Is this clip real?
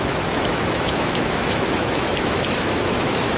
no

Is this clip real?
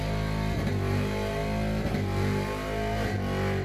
yes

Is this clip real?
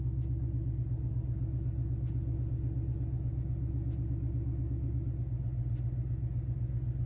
yes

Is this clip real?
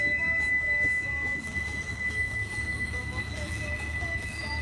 no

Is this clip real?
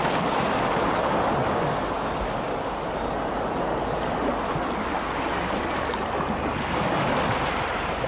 yes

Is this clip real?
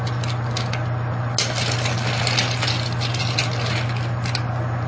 yes